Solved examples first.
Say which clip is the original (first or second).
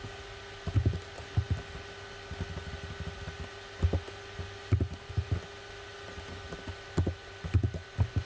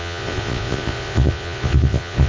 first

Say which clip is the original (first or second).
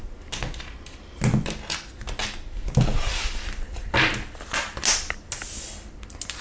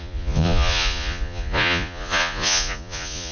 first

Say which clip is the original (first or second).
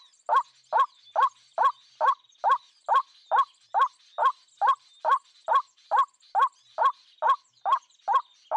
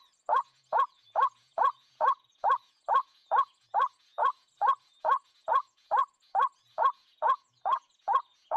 first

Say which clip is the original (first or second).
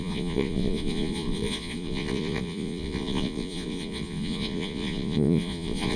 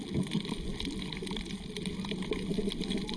second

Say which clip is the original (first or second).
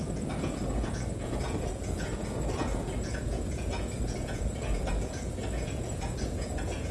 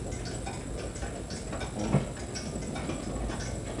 second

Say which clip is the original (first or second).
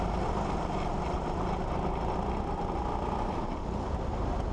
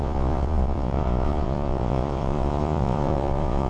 first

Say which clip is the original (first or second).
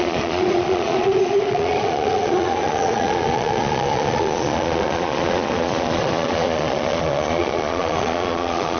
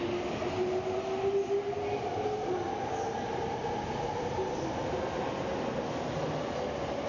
second